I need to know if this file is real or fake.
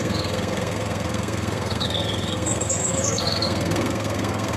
fake